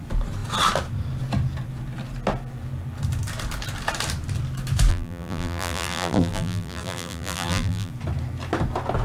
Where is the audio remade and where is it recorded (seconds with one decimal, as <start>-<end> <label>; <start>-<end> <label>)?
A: 0.0-4.9 recorded; 4.9-7.9 remade; 7.9-9.0 recorded